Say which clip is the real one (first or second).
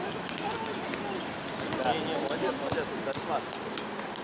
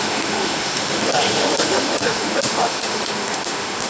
first